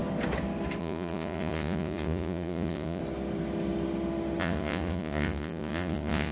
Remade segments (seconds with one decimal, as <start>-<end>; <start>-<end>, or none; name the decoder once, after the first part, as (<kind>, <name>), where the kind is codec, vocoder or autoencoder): 0.8-3.0 (vocoder, Vocos); 4.4-6.3